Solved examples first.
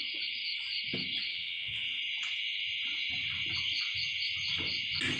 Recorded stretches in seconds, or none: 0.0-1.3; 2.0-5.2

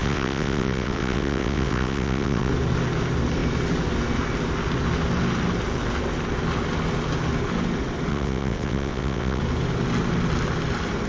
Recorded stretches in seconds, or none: 2.5-8.1; 9.4-11.1